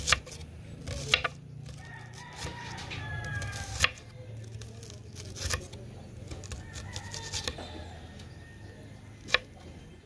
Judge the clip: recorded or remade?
recorded